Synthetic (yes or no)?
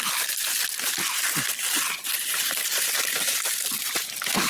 no